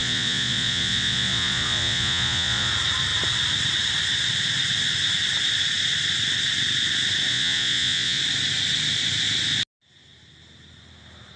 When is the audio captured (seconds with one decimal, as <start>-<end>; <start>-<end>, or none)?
2.7-7.3; 8.2-11.4